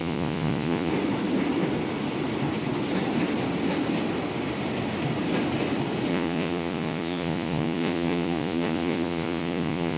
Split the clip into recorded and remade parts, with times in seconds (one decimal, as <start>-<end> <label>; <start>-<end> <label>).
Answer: 0.0-0.9 remade; 0.9-6.1 recorded; 6.1-10.0 remade